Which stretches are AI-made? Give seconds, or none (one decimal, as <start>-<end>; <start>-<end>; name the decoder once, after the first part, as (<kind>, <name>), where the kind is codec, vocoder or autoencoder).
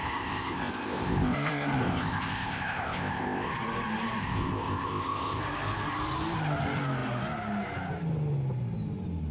0.0-3.5 (codec, ZipCodec); 4.2-5.4